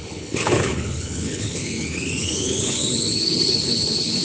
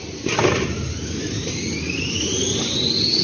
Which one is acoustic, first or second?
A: second